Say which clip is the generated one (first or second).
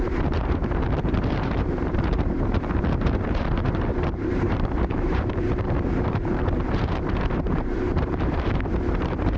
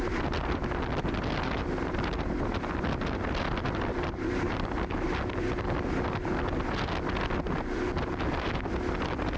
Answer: first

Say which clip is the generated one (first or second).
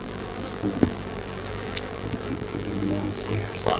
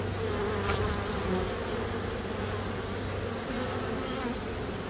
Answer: first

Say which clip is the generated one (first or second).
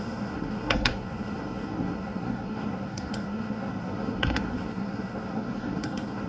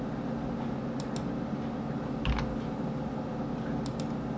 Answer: first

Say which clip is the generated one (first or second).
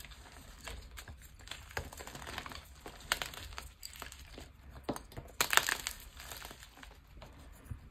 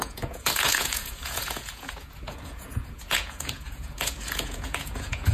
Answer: second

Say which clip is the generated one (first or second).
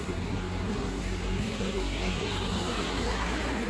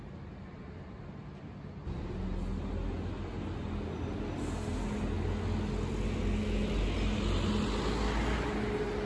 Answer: first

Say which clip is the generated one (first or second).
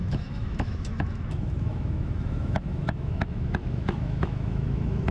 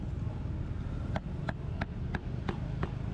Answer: first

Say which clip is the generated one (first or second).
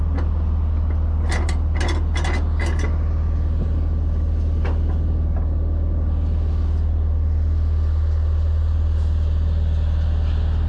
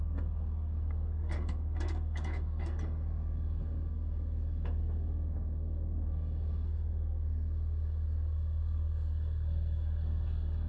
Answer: second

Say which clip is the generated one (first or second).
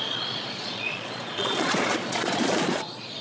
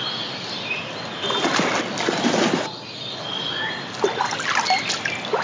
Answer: first